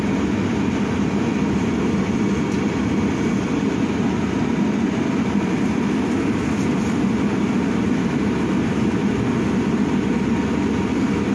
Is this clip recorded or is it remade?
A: recorded